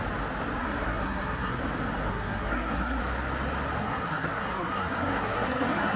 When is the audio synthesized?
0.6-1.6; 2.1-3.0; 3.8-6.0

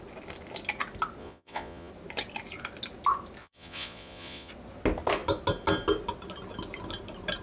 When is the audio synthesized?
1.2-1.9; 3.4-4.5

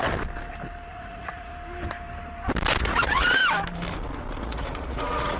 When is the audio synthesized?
0.9-1.5; 2.8-3.4; 4.4-5.4

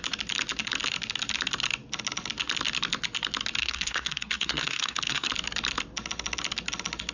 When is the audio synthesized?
3.6-5.3

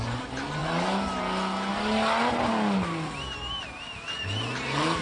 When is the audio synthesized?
none

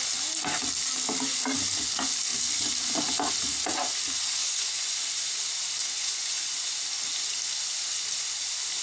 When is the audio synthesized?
4.4-5.3; 5.8-6.8

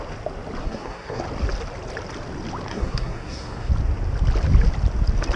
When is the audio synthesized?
0.6-1.2; 2.7-3.7

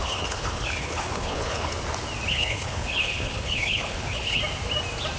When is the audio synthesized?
0.0-1.7; 2.3-4.4